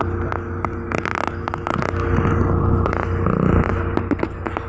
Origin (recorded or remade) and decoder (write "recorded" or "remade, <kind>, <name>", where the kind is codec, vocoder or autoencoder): recorded